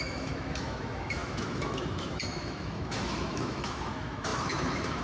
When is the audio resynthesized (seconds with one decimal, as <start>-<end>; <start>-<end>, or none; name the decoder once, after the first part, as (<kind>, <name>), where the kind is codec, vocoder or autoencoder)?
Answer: 0.0-5.0 (autoencoder, DAC-VAE)